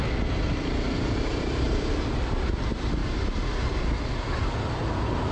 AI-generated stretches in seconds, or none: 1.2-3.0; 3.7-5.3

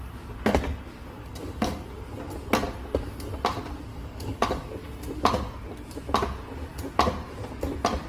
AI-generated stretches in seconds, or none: 1.2-1.8; 3.9-4.7